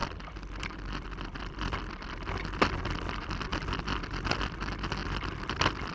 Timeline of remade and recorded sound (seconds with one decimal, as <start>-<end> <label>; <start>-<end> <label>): 0.0-5.9 recorded